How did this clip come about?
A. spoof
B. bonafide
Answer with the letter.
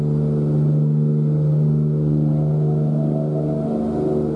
B